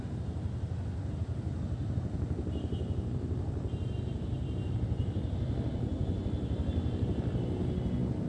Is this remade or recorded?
recorded